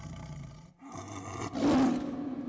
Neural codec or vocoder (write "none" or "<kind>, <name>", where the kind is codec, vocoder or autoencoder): none